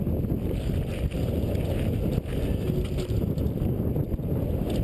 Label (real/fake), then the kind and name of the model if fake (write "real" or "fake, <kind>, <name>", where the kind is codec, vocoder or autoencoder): real